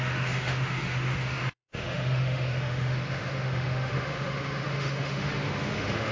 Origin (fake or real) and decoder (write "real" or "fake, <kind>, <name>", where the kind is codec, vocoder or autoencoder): fake, autoencoder, DAC-VAE